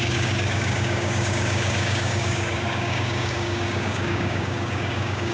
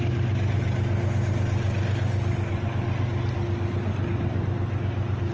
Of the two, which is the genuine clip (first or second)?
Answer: second